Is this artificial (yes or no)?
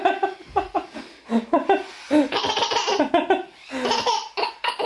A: yes